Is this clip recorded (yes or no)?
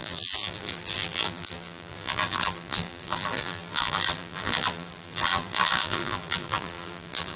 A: no